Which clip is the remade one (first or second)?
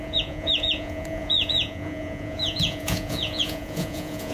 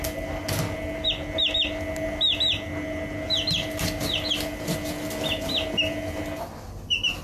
first